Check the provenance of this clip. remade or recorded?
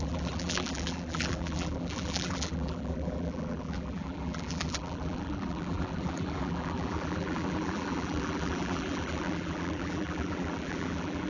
remade